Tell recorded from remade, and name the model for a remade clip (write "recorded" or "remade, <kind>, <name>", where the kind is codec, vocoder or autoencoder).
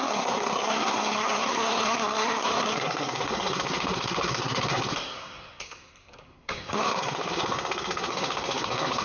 remade, codec, SNAC